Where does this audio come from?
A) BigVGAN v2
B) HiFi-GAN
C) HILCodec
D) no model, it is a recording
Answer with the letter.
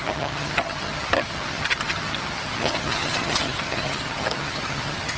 B